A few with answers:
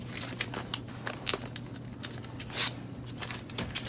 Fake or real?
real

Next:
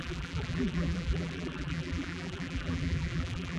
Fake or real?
fake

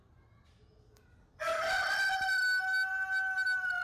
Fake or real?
real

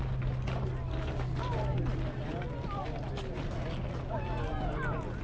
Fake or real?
real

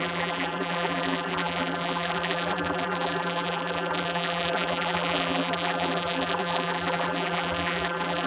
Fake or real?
fake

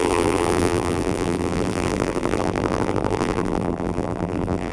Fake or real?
fake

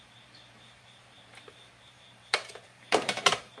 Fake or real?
fake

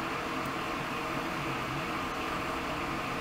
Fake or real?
real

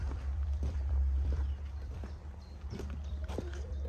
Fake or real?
fake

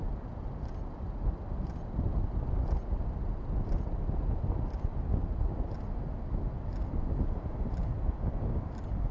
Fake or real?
real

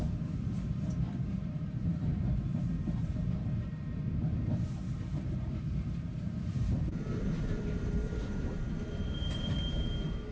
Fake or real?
fake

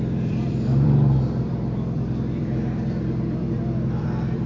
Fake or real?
fake